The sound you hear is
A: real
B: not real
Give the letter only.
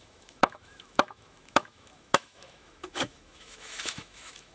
B